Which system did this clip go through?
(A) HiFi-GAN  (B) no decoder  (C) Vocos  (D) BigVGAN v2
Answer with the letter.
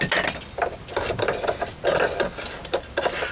B